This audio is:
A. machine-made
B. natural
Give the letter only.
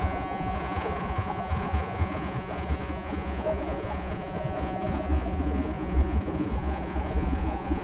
A